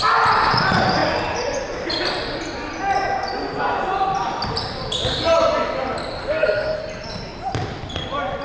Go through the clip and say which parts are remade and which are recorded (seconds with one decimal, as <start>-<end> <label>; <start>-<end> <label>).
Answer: 0.0-6.2 recorded; 6.2-6.8 remade; 6.8-8.4 recorded

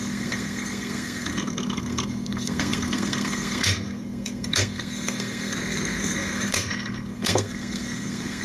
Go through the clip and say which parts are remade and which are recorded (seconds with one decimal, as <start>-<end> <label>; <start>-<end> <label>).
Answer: 0.0-8.4 remade

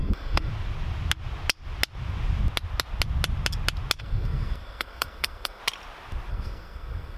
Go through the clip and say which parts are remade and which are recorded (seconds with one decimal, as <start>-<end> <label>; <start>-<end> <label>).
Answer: 0.0-0.5 remade; 0.5-4.0 recorded; 4.0-5.6 remade; 5.6-6.3 recorded; 6.3-7.2 remade

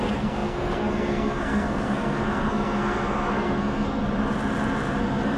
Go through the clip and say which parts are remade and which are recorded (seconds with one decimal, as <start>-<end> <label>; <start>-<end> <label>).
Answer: 0.0-4.0 remade; 4.0-5.0 recorded; 5.0-5.4 remade

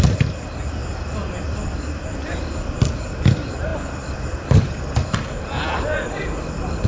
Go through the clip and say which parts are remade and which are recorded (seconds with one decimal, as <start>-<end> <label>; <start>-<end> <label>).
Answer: 0.0-6.9 recorded

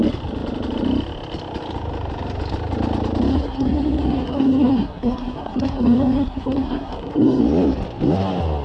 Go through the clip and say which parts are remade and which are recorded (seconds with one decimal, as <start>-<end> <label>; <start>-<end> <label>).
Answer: 0.0-3.3 recorded; 3.3-7.4 remade; 7.4-8.6 recorded